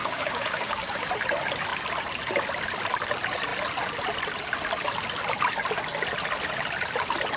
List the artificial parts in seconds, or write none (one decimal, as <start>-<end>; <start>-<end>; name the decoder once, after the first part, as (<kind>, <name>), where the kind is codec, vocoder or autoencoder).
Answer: 0.0-1.1 (codec, DAC)